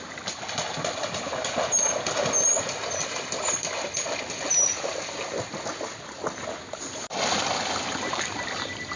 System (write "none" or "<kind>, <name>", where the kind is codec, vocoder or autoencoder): none